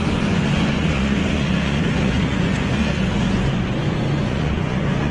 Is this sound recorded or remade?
remade